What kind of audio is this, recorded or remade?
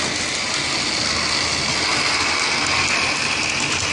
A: recorded